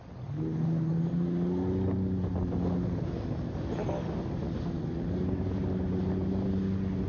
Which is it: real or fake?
real